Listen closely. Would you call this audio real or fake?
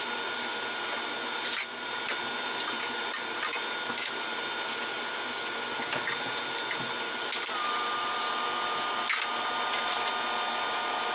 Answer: real